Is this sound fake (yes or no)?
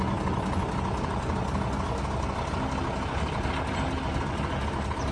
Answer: no